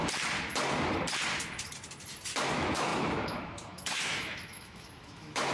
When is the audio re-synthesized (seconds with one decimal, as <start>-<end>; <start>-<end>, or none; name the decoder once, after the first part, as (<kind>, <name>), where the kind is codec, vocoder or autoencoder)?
2.5-5.5 (autoencoder, DAC-VAE)